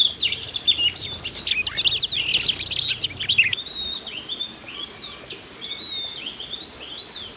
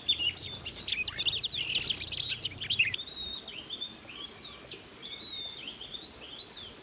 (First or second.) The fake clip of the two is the second